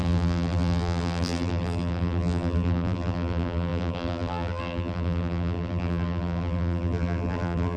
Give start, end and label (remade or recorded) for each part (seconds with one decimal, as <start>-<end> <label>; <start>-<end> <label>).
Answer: 0.0-7.8 remade